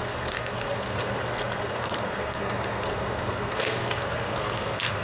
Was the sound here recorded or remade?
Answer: remade